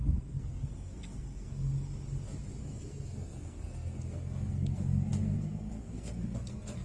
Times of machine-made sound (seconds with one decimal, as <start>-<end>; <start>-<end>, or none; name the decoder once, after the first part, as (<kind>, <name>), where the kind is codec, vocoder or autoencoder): 0.0-1.7 (codec, SNAC); 2.6-6.8